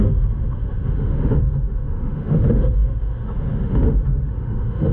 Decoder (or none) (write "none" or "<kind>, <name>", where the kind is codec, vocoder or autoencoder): autoencoder, DAC-VAE